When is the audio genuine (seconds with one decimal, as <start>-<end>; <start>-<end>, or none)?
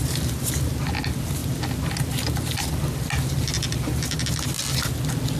0.0-5.4